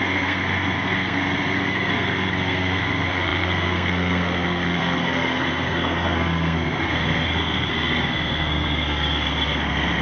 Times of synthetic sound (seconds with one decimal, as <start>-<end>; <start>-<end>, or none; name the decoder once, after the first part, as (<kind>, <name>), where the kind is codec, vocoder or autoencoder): 0.0-10.0 (codec, SNAC)